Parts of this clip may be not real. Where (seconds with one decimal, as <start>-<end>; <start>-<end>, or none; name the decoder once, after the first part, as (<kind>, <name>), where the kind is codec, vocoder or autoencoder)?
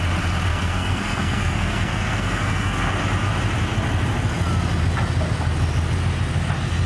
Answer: 0.5-2.9 (codec, SNAC)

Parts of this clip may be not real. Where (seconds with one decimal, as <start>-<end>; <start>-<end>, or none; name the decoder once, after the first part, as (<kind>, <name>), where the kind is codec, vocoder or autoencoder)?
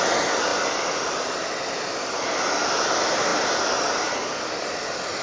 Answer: none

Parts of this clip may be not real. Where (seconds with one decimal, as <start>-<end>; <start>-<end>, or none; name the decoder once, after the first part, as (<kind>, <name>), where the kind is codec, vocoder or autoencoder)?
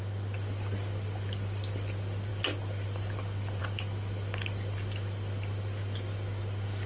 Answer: none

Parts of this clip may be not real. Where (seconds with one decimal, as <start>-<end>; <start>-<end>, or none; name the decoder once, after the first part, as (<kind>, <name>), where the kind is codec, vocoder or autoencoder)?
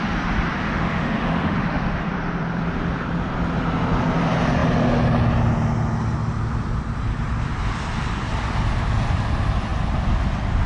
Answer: 0.6-2.1 (autoencoder, DAC-VAE)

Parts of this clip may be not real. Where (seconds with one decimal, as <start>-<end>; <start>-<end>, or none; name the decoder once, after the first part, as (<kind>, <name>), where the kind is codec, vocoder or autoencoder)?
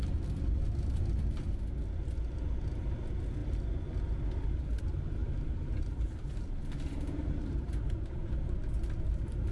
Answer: 5.2-8.5 (vocoder, BigVGAN v2)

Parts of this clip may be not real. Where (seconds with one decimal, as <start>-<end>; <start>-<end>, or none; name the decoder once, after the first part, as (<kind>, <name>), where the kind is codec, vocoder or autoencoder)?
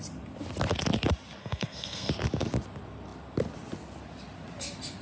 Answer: 1.4-2.1 (codec, SNAC)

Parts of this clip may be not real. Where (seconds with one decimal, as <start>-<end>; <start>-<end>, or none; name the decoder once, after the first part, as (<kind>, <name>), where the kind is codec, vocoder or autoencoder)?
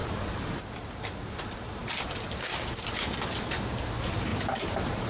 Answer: 0.0-1.1 (vocoder, BigVGAN v2); 1.8-3.0; 4.3-5.1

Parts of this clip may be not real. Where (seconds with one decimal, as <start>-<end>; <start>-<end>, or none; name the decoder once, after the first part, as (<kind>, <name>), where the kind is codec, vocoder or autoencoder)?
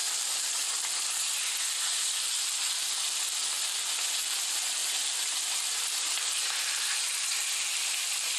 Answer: 0.0-0.5 (vocoder, BigVGAN v2)